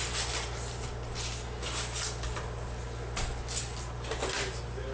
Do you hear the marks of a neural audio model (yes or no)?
no